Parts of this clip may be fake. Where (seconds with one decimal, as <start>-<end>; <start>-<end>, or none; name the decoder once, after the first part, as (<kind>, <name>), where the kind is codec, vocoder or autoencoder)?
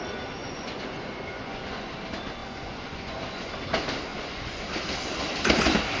0.4-1.9 (vocoder, Vocos); 2.4-3.5; 4.1-4.6